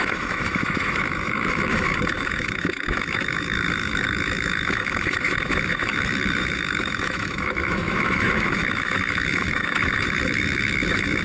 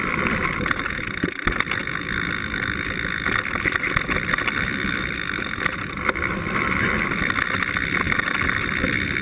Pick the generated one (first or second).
first